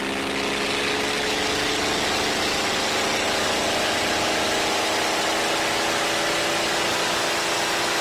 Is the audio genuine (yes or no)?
yes